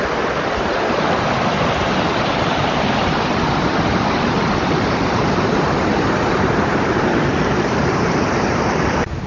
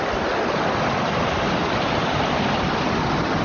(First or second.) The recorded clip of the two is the second